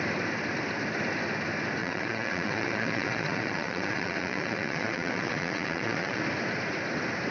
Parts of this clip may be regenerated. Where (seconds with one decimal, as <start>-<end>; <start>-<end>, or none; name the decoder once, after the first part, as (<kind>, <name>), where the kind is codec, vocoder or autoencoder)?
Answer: 1.8-6.2 (vocoder, Vocos)